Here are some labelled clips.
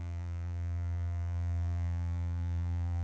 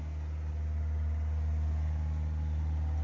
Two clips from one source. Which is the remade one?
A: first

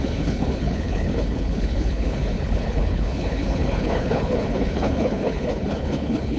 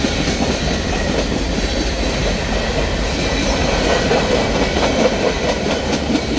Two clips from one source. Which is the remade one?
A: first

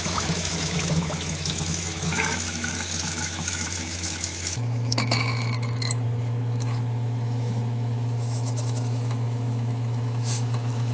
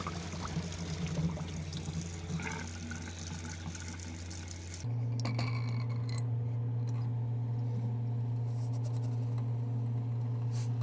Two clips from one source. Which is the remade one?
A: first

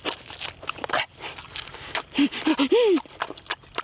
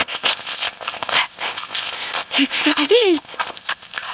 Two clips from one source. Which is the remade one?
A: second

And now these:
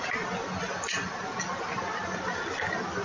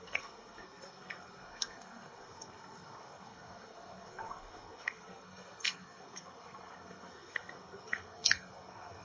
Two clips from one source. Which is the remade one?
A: second